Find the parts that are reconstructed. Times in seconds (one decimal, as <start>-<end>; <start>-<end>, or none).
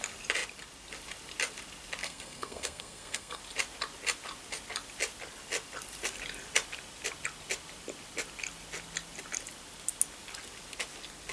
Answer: 2.0-3.4